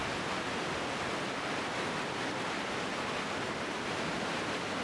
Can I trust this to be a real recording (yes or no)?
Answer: yes